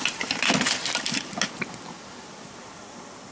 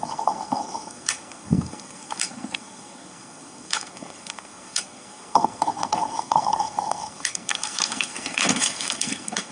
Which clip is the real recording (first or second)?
first